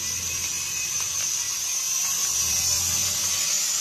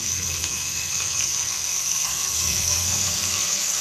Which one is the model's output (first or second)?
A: second